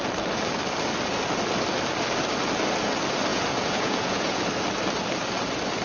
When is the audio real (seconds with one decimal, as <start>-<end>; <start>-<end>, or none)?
0.0-3.3; 4.5-5.8